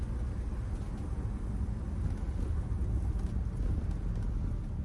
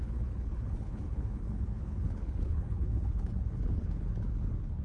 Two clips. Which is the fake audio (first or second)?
second